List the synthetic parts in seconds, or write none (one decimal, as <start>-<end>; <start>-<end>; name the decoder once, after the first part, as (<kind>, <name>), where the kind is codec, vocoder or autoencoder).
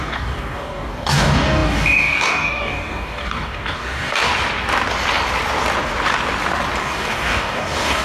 0.0-4.3 (codec, DAC); 6.8-8.0